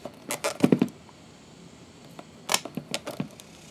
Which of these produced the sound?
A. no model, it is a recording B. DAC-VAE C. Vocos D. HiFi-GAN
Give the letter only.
A